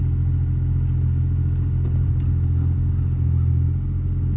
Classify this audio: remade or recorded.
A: recorded